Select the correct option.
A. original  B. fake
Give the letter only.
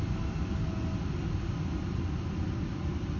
A